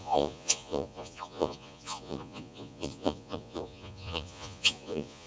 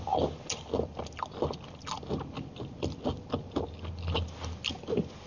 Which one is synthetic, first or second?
first